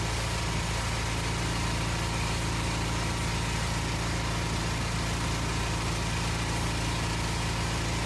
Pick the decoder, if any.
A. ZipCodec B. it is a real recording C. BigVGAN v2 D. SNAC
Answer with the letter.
B